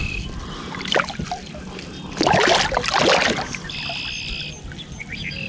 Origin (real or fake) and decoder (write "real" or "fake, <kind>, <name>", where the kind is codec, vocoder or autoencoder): real